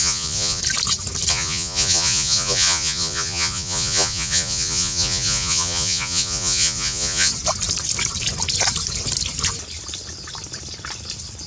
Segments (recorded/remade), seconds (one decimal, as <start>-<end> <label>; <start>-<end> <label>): 0.0-0.6 remade; 0.6-1.3 recorded; 1.3-7.3 remade; 7.3-11.5 recorded